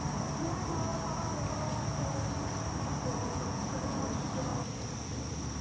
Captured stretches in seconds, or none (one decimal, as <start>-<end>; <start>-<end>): 0.0-3.1; 4.0-5.6